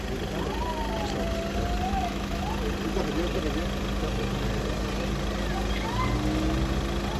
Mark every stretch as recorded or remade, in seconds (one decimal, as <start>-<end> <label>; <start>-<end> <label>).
0.0-1.9 recorded; 1.9-2.4 remade; 2.4-7.2 recorded